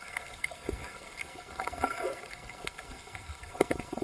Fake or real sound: fake